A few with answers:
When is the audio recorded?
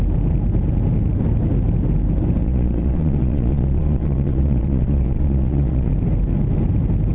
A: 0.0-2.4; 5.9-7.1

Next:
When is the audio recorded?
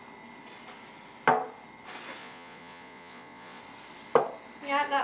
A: 0.0-2.2; 3.6-5.0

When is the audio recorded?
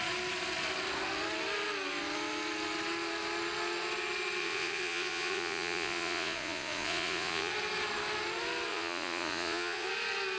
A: 0.0-4.4; 7.5-8.7; 9.9-10.4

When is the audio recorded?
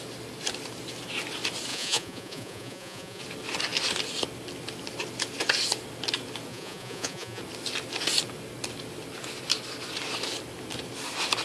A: 0.0-1.7; 3.2-6.5; 7.4-11.4